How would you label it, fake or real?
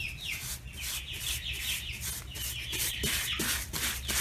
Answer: real